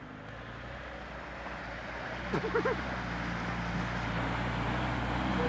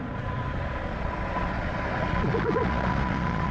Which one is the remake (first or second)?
second